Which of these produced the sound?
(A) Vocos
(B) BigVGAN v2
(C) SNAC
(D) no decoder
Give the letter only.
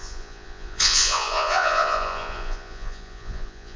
A